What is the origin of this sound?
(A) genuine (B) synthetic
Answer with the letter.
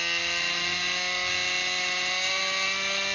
A